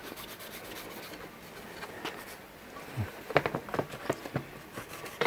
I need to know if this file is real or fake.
real